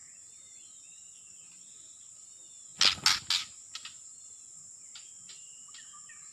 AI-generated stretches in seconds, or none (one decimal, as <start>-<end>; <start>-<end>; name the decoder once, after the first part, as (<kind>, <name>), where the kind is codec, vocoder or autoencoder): none